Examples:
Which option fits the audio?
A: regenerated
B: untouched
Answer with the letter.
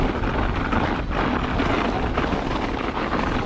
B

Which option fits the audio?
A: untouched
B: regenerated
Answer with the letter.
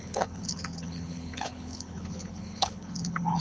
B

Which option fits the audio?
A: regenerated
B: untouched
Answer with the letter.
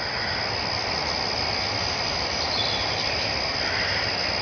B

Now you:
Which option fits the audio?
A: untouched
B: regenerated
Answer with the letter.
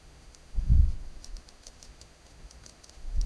B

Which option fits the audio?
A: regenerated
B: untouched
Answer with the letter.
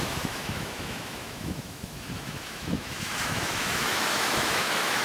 A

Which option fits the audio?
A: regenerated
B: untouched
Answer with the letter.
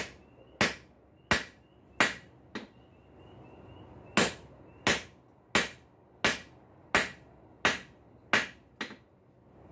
B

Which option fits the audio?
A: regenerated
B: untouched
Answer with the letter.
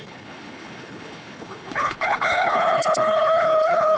A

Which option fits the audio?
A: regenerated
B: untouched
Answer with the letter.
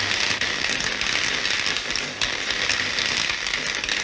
B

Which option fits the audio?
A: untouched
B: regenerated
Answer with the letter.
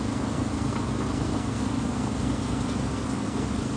B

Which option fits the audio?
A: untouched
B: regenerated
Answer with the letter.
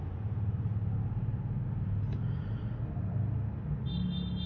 A